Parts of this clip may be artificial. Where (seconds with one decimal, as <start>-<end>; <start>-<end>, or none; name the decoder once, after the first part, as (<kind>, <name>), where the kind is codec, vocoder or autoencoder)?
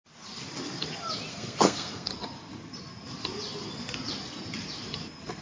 1.3-2.1 (codec, SNAC)